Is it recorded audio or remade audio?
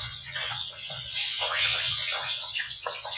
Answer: remade